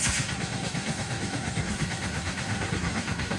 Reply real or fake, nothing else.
fake